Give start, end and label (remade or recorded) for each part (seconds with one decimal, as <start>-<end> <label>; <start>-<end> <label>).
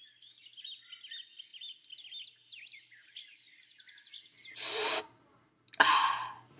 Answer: 0.0-6.6 recorded